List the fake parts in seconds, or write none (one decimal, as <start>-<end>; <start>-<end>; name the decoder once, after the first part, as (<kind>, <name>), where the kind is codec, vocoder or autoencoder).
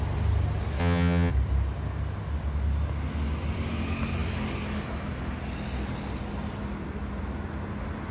0.8-1.3 (vocoder, HiFi-GAN)